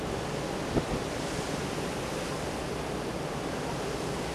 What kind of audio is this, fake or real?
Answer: real